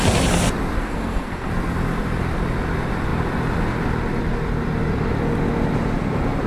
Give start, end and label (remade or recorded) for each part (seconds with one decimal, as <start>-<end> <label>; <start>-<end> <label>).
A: 0.0-0.8 recorded; 0.8-1.5 remade; 1.5-6.5 recorded